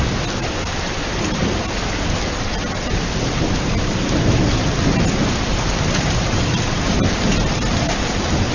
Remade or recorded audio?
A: recorded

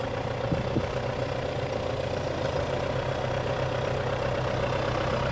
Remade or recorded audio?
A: recorded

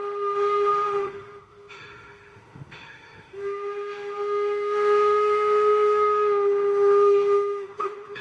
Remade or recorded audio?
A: remade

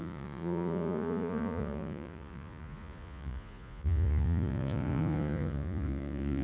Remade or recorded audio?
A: remade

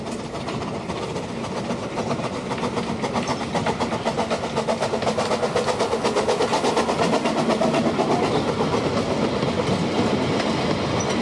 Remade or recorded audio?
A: recorded